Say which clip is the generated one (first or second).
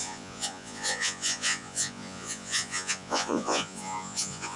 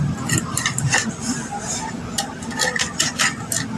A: first